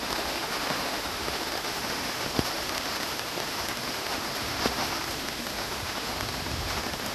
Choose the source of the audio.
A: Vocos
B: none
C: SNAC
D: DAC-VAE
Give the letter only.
D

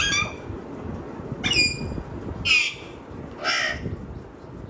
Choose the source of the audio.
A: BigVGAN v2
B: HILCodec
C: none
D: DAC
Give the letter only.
C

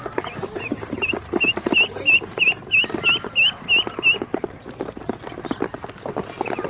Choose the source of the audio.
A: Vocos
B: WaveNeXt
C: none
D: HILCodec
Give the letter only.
C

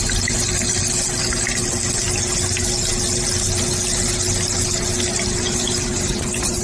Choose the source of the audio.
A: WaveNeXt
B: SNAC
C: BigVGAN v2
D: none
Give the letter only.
D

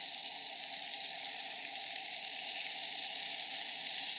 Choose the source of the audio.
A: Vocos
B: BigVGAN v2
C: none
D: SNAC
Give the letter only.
B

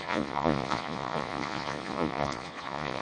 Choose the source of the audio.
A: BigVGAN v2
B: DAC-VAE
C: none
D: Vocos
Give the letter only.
D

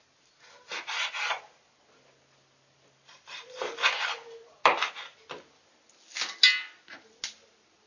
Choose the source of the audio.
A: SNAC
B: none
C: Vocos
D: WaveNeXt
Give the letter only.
B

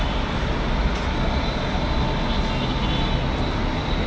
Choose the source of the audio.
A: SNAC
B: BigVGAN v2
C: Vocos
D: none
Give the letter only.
D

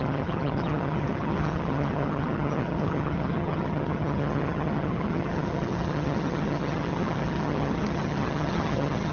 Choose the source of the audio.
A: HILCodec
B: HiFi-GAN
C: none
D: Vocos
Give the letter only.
B